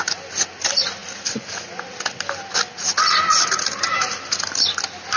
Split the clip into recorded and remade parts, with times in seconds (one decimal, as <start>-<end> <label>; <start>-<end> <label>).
0.0-5.2 recorded